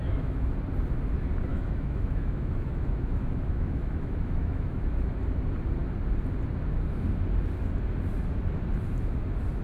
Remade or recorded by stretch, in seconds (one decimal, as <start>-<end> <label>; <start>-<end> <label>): 0.0-0.5 remade; 0.5-1.5 recorded; 1.5-5.1 remade; 5.1-9.6 recorded